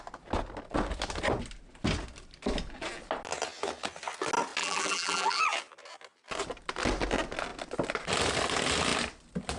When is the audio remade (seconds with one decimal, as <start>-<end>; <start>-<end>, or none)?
4.6-5.4